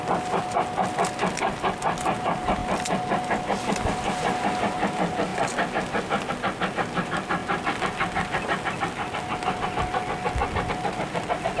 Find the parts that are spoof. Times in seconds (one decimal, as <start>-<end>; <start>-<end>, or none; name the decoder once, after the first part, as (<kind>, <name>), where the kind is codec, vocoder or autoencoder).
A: none